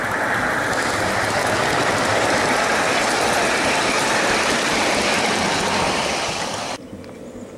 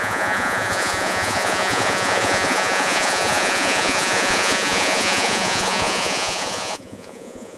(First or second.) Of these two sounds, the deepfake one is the second